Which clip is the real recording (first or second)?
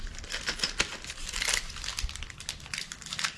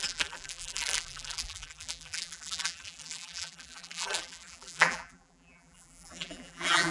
first